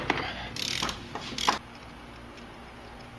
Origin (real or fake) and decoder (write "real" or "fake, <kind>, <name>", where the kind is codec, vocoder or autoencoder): real